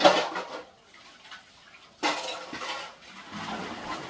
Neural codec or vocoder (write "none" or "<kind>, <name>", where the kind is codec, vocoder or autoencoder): none